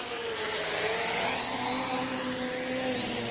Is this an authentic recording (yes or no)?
yes